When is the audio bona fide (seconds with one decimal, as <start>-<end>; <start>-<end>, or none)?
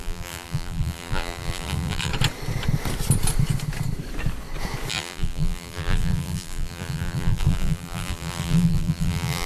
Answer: 2.1-4.9